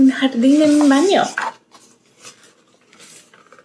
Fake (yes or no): no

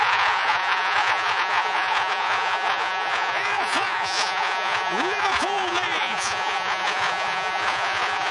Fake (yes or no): yes